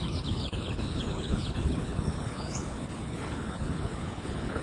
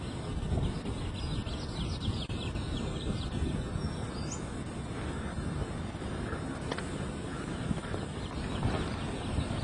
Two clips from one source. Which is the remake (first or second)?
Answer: first